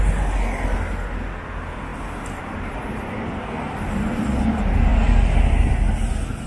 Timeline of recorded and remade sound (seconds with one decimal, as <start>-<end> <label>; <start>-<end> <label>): 0.0-6.5 recorded